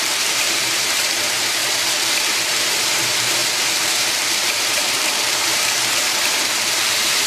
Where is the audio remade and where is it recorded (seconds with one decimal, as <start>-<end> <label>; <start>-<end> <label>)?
0.0-1.6 remade; 1.6-2.1 recorded; 2.1-7.3 remade